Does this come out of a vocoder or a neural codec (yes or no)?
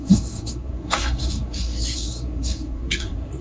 yes